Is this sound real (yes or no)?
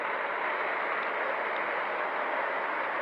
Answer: yes